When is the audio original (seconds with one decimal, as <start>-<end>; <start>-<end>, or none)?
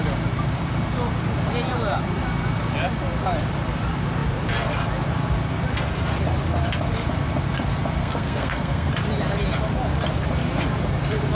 0.0-8.0; 8.9-11.3